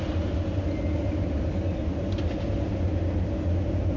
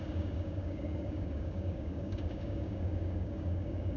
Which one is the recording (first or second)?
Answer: first